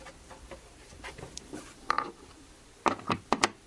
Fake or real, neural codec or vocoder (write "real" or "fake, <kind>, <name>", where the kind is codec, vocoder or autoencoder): fake, vocoder, BigVGAN v2